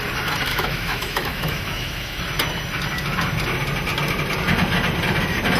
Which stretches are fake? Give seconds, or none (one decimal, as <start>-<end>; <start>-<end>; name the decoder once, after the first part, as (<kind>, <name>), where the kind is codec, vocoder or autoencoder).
0.5-2.2 (autoencoder, DAC-VAE)